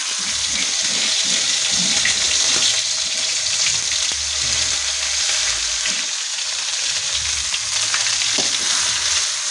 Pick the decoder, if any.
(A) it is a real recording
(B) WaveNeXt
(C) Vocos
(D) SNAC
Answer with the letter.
A